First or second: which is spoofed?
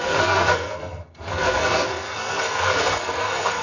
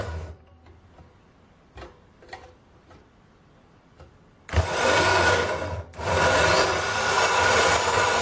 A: first